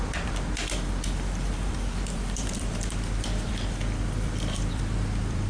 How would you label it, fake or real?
fake